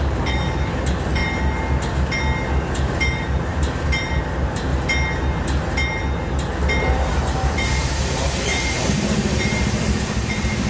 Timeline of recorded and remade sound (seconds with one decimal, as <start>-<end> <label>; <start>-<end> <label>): 0.0-1.2 remade; 1.2-2.9 recorded; 2.9-4.7 remade; 4.7-6.8 recorded; 6.8-10.7 remade